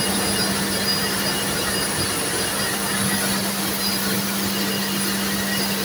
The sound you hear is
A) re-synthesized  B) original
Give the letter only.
B